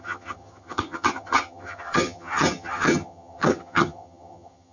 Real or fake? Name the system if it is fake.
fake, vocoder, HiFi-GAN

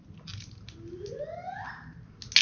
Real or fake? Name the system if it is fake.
real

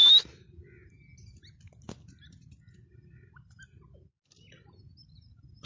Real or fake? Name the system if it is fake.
real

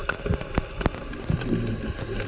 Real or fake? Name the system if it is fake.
real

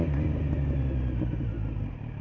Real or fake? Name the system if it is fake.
real